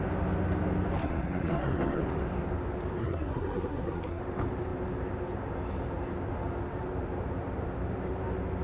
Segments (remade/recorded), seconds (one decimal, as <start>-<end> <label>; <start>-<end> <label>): 0.0-1.0 recorded; 1.0-2.0 remade; 2.0-3.0 recorded; 3.0-4.2 remade; 4.2-8.6 recorded